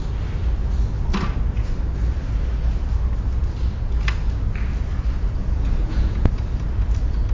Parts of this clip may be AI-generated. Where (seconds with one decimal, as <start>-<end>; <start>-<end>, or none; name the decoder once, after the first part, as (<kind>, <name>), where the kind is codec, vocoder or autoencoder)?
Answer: 5.4-6.3 (vocoder, Vocos)